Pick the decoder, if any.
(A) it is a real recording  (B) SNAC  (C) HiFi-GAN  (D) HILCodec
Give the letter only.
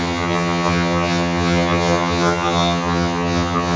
C